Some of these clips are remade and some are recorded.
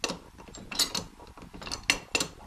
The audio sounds recorded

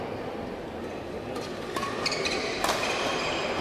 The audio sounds recorded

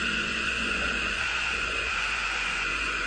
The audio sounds remade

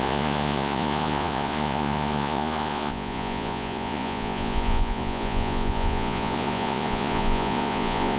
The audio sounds remade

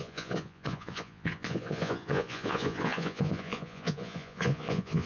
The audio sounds remade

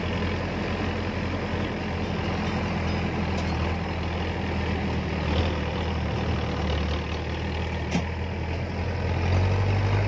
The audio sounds recorded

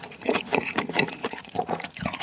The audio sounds remade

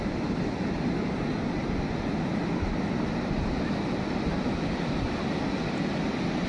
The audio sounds recorded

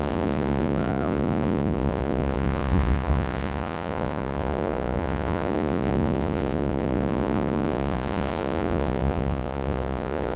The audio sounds remade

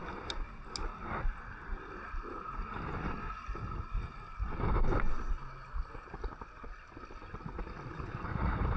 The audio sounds recorded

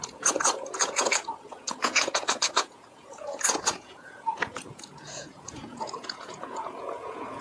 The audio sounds remade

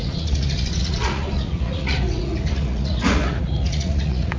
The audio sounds remade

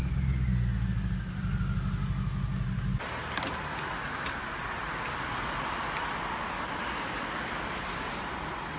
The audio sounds recorded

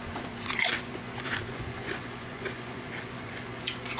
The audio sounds remade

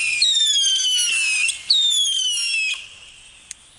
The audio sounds recorded